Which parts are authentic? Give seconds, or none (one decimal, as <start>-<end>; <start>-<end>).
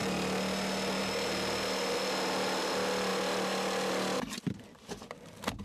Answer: 0.0-5.6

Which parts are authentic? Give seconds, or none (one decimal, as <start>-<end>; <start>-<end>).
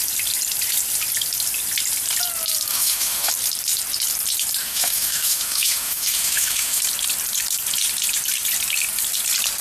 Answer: 0.0-2.7; 3.3-4.6; 6.8-9.6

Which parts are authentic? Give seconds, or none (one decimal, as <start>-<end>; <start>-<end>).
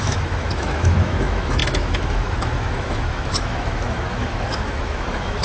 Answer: none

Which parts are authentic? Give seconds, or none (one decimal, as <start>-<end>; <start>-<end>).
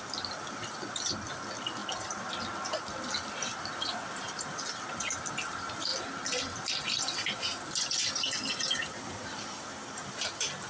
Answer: 0.0-10.7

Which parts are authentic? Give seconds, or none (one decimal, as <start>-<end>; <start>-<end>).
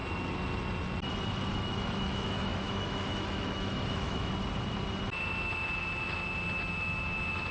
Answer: 0.0-1.5; 4.3-7.5